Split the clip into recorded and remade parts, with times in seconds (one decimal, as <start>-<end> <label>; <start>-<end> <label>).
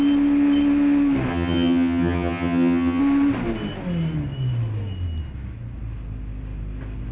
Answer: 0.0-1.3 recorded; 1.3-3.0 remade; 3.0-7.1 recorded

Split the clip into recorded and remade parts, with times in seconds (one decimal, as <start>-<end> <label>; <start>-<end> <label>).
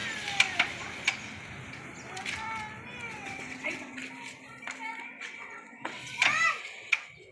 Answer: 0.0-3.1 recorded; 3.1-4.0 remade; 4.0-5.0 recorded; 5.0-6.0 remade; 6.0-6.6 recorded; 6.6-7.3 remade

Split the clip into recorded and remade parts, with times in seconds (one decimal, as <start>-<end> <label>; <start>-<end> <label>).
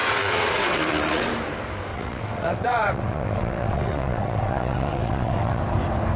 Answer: 0.0-1.3 remade; 1.3-1.9 recorded; 1.9-5.6 remade; 5.6-6.2 recorded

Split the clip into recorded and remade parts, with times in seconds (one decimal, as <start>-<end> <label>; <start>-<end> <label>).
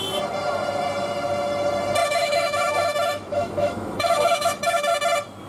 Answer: 0.0-2.0 recorded; 2.0-4.9 remade; 4.9-5.5 recorded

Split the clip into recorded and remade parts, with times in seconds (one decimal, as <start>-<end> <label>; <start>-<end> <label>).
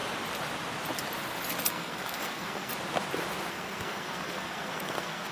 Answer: 0.0-1.7 recorded; 1.7-2.7 remade; 2.7-3.5 recorded; 3.5-5.3 remade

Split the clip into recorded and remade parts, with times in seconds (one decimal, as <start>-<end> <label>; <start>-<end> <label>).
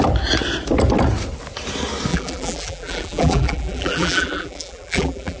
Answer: 0.0-2.1 recorded; 2.1-5.4 remade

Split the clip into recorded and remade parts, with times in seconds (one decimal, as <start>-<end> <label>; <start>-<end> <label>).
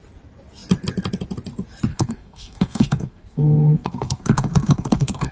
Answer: 0.0-1.9 recorded; 1.9-5.3 remade